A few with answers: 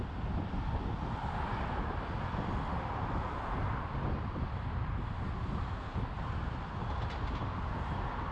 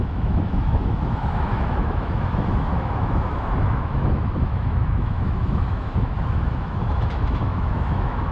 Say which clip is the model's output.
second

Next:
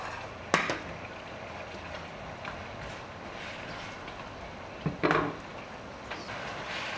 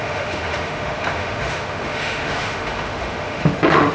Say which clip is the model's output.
second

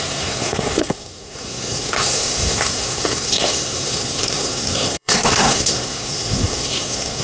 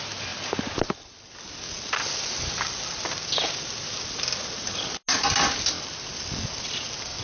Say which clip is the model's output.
first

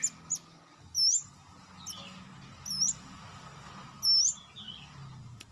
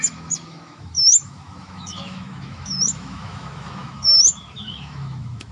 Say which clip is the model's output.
second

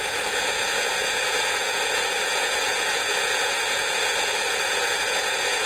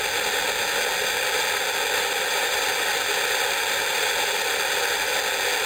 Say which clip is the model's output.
first